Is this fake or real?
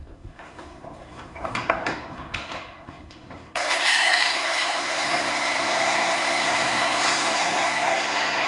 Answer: fake